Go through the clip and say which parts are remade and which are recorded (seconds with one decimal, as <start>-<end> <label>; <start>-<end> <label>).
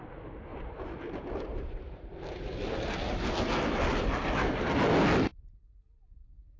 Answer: 0.0-0.5 recorded; 0.5-2.0 remade; 2.0-6.6 recorded